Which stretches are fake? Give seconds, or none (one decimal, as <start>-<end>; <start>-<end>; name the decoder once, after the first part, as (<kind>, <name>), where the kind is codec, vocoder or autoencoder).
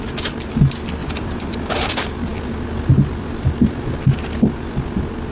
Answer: 1.0-1.9 (vocoder, BigVGAN v2)